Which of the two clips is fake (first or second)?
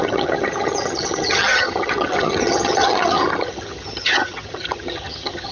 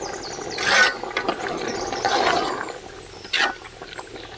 first